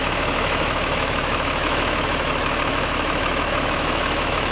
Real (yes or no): no